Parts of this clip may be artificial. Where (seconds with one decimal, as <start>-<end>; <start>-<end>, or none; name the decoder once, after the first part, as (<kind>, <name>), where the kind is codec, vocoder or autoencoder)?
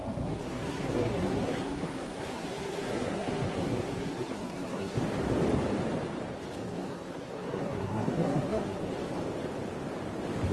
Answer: 0.0-5.0 (codec, SNAC); 6.6-8.8